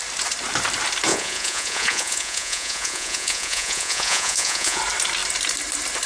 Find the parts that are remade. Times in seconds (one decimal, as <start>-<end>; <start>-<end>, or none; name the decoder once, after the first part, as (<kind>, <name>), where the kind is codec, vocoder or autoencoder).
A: 1.1-4.8 (vocoder, Vocos)